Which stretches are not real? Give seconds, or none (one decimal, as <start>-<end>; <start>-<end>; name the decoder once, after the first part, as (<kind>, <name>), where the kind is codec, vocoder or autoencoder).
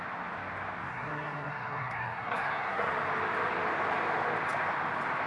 0.9-2.9 (codec, SNAC)